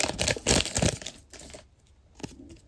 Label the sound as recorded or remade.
recorded